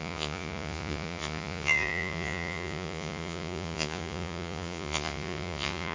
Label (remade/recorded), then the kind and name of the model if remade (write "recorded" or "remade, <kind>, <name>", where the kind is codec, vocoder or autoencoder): remade, vocoder, Vocos